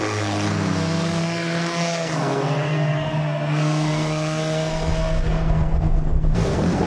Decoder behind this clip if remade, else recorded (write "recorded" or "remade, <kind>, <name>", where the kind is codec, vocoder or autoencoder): remade, codec, SNAC